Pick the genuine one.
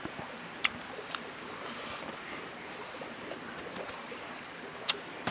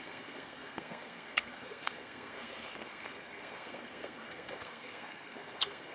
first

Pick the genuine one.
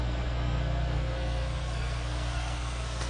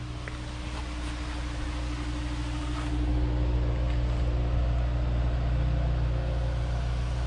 second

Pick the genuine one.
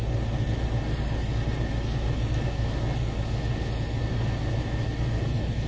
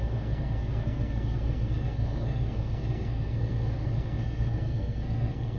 first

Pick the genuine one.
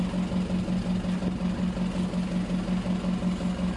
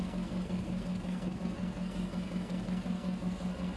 first